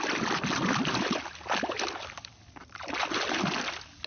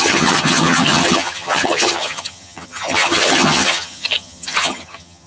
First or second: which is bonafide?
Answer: first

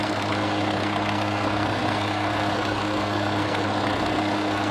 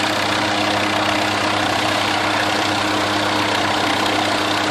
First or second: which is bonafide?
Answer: second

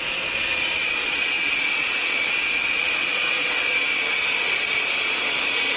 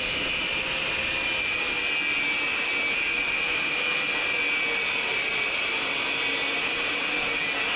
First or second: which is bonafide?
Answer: second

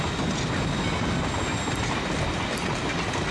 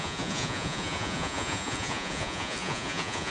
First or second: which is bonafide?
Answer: first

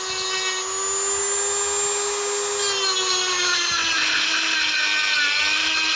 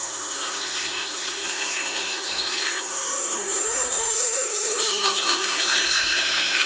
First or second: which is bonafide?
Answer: first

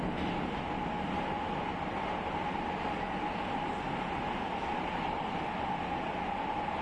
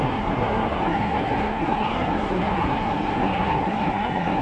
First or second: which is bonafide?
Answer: first